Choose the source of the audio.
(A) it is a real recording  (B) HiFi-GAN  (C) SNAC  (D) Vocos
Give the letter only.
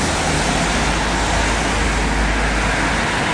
A